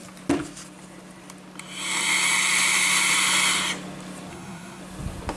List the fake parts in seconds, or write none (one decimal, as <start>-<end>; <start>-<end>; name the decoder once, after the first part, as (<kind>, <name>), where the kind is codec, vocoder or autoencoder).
4.3-4.8 (codec, SNAC)